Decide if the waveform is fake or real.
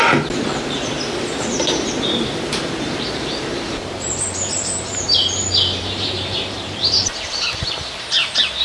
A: fake